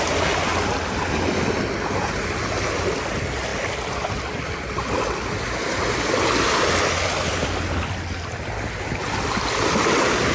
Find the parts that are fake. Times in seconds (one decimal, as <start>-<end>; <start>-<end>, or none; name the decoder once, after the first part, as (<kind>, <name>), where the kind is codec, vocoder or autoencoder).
none